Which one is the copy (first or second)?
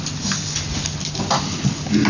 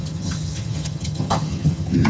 second